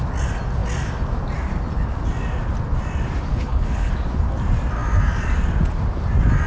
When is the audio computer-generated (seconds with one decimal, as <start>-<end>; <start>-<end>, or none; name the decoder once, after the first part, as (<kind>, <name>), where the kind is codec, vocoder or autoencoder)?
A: 3.3-3.9 (codec, HILCodec)